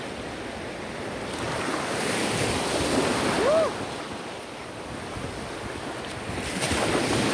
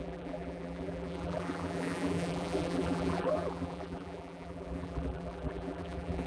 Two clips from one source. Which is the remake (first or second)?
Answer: second